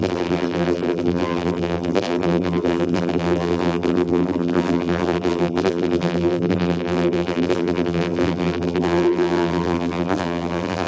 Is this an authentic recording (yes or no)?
no